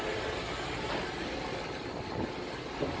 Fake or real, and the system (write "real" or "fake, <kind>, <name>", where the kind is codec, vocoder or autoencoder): real